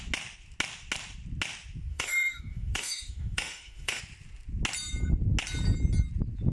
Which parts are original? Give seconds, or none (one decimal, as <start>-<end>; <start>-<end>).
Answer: 0.0-1.9; 4.0-6.5